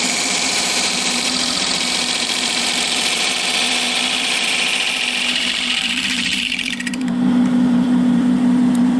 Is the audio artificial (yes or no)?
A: yes